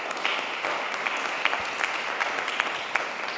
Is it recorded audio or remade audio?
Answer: recorded